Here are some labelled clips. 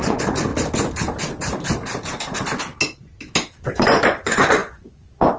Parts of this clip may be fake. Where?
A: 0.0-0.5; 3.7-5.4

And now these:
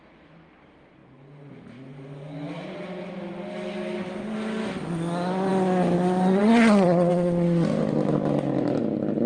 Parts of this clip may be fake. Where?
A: none